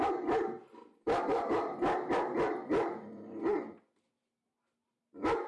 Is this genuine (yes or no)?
yes